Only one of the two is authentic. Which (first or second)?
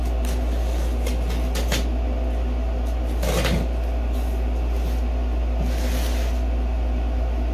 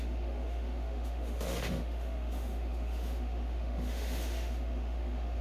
first